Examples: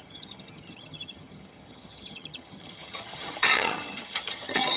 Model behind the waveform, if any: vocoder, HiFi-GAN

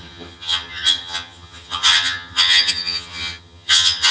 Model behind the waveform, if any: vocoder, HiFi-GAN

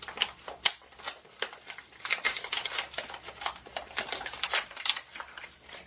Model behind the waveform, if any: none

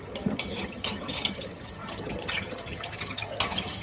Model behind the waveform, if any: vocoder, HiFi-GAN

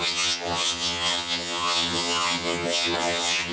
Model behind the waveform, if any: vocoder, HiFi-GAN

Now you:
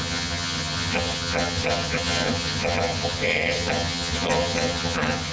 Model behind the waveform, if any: vocoder, HiFi-GAN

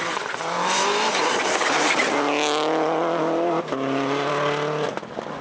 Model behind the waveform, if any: none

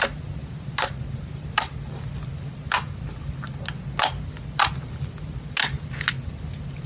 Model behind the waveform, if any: none